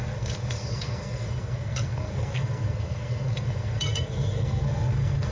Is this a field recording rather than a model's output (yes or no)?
no